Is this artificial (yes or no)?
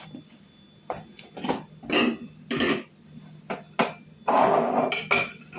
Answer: no